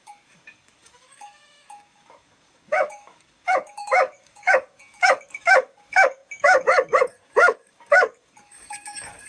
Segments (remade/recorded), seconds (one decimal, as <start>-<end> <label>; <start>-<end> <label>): 0.0-9.3 remade

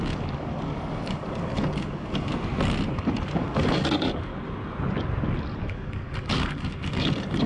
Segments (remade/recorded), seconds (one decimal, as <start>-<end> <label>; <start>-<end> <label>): 0.0-2.3 remade; 2.3-2.9 recorded; 2.9-4.3 remade; 4.3-5.6 recorded; 5.6-7.5 remade

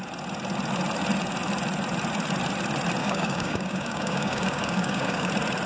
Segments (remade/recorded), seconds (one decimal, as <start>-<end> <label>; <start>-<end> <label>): 0.0-3.0 recorded; 3.0-5.3 remade; 5.3-5.7 recorded

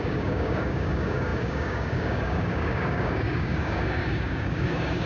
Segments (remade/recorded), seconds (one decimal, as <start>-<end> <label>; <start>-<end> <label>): 0.0-5.1 remade

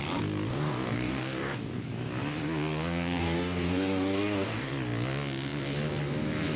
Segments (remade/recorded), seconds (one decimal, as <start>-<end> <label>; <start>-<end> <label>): 0.0-0.5 recorded; 0.5-1.8 remade; 1.8-3.2 recorded; 3.2-4.7 remade; 4.7-6.6 recorded

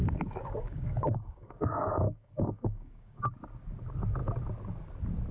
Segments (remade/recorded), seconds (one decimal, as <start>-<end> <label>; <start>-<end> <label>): 0.0-3.2 remade; 3.2-5.3 recorded

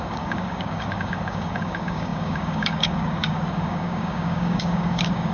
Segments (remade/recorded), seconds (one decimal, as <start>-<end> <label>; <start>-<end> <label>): 0.0-5.3 remade